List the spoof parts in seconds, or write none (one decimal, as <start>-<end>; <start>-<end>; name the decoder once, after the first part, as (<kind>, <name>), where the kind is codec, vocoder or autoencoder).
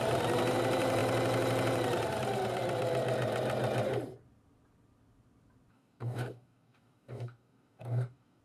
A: 5.7-8.4 (codec, DAC)